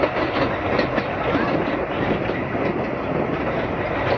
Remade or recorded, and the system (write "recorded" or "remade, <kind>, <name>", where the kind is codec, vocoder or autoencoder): recorded